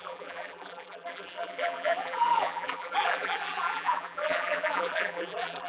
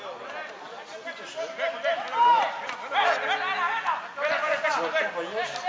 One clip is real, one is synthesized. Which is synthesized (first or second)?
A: first